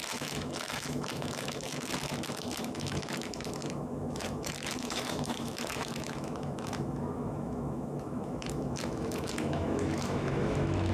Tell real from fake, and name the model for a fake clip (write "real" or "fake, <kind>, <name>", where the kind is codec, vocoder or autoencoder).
fake, autoencoder, DAC-VAE